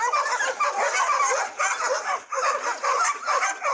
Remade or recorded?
recorded